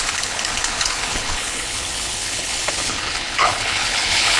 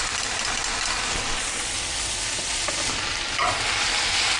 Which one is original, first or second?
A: second